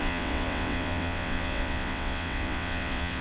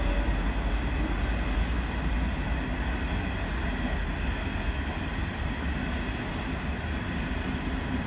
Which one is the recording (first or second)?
second